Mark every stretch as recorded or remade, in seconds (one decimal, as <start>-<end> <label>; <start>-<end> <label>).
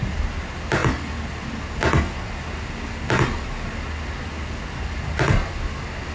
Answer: 0.0-6.1 recorded